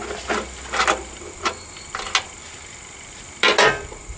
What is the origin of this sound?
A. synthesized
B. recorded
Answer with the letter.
B